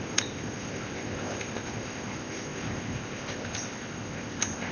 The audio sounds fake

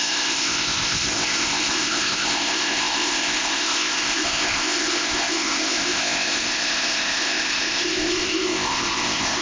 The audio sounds fake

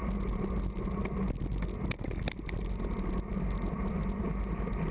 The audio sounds real